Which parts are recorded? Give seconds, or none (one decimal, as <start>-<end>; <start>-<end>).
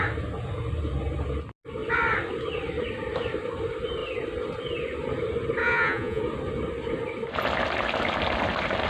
0.0-5.6; 6.2-8.9